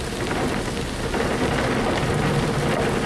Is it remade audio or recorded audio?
recorded